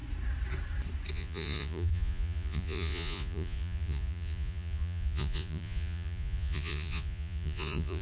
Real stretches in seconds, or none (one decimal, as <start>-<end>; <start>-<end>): 0.0-1.1